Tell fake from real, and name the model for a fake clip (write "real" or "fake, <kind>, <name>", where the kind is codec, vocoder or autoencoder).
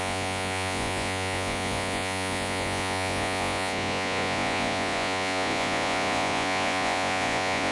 fake, vocoder, Vocos